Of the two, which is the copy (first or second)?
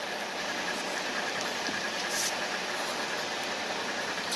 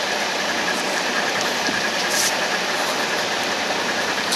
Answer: second